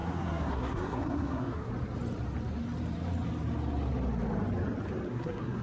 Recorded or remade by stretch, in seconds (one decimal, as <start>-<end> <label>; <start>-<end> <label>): 0.0-1.7 remade; 1.7-5.1 recorded; 5.1-5.6 remade